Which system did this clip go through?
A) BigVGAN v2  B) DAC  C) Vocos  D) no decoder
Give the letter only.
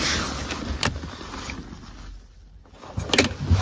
D